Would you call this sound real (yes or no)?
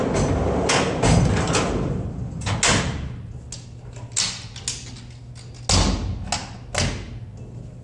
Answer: yes